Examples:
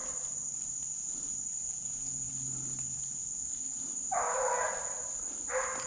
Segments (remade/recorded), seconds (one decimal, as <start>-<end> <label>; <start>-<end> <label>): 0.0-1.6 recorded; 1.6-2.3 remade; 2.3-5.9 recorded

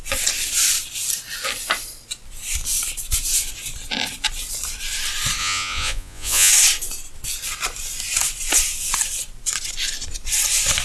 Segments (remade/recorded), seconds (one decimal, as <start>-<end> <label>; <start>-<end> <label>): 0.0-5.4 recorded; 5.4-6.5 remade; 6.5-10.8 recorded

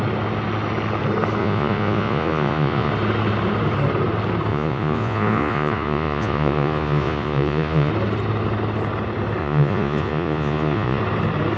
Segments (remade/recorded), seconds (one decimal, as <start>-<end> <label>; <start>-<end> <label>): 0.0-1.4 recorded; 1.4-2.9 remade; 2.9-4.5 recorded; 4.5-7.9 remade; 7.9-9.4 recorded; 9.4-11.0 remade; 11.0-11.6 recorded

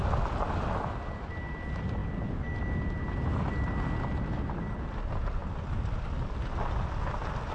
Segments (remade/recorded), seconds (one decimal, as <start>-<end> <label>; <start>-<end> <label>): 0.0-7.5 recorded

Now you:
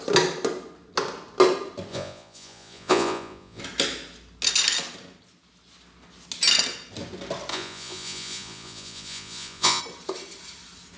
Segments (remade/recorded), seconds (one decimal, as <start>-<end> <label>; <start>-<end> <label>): 0.0-1.9 recorded; 1.9-3.6 remade; 3.6-7.5 recorded; 7.5-9.8 remade; 9.8-11.0 recorded

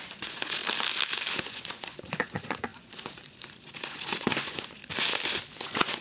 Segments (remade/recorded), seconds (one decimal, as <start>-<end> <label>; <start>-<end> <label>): 0.0-0.6 remade; 0.6-1.4 recorded; 1.4-4.8 remade; 4.8-5.6 recorded; 5.6-6.0 remade

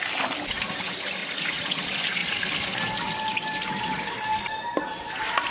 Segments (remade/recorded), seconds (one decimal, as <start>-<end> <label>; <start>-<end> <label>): 0.0-1.2 recorded; 1.2-1.8 remade; 1.8-5.5 recorded